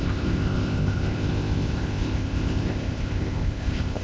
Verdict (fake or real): fake